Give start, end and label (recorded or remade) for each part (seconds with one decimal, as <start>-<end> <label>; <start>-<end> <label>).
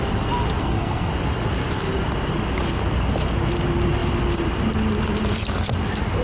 0.0-0.6 recorded; 0.6-1.1 remade; 1.1-6.2 recorded